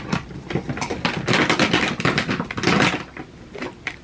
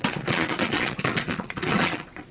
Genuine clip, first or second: first